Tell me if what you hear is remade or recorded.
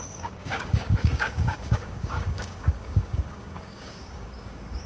remade